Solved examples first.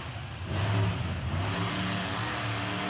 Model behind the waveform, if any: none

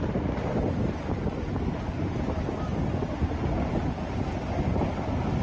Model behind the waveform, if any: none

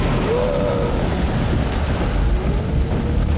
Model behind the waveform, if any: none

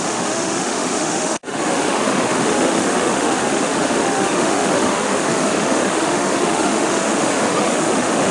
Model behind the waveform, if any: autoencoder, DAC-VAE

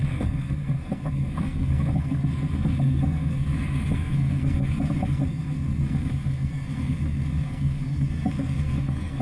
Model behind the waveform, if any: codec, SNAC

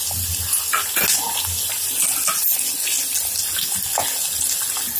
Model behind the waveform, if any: none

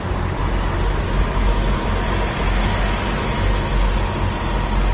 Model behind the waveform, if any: none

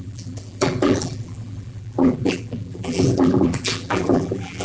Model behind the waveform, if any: vocoder, BigVGAN v2